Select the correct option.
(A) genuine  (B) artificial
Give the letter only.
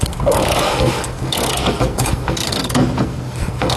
B